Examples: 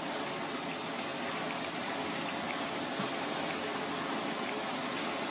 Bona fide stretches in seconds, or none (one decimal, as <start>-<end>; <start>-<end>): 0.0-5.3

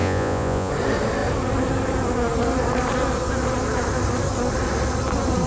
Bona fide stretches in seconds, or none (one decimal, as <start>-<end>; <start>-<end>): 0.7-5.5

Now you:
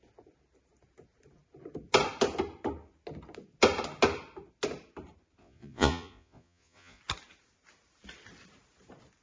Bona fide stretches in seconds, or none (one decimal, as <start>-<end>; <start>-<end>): 0.0-5.4; 7.0-9.2

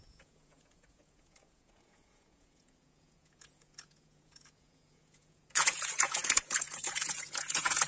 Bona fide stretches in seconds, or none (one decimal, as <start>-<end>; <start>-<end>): none